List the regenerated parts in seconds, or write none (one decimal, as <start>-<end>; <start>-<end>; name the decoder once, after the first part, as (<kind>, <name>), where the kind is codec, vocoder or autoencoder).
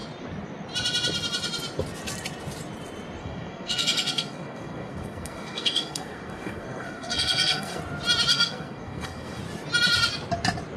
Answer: 3.2-7.8 (codec, SNAC); 8.3-9.4